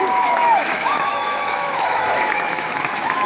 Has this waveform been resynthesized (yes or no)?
yes